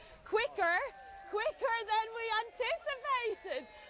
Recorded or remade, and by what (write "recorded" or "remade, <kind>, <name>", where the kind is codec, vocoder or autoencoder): recorded